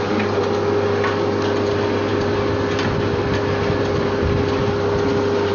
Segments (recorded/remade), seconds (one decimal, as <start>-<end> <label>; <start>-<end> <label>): 0.0-5.5 recorded